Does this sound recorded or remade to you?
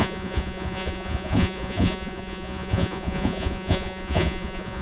remade